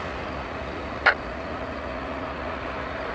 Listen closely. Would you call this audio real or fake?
fake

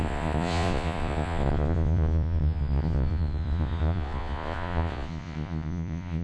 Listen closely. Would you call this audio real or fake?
fake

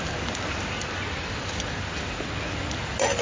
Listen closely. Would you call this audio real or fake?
real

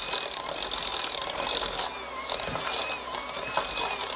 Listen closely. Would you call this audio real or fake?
real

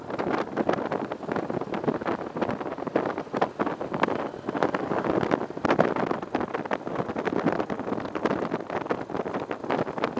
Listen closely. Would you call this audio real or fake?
real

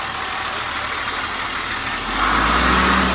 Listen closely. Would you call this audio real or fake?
real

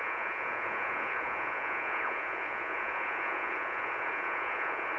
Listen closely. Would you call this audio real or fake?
fake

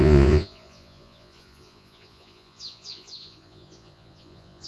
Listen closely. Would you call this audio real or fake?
fake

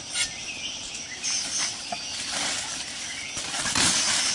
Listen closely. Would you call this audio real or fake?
real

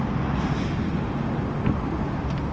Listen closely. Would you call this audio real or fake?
real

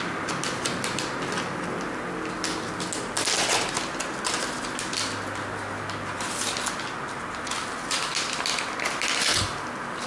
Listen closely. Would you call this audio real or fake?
real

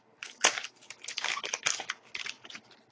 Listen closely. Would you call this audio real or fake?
real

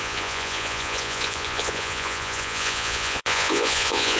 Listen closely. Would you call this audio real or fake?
fake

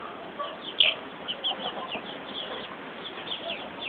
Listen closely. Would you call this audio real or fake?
real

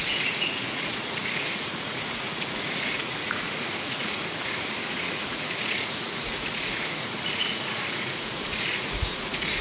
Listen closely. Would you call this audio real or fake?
fake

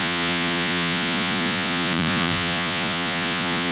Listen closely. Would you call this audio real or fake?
fake